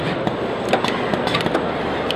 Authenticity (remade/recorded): recorded